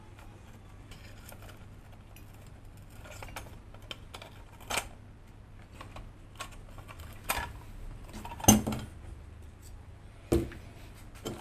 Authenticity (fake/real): real